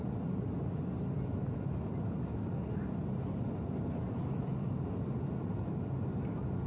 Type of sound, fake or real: real